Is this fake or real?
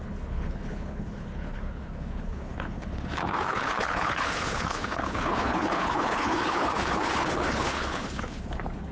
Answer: fake